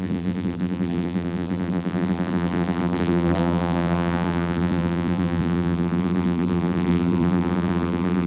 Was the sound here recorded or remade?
remade